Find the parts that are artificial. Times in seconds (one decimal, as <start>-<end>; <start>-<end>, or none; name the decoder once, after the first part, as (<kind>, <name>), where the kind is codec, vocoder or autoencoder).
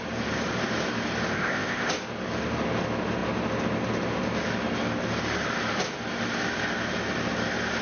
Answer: 1.3-1.9 (codec, ZipCodec)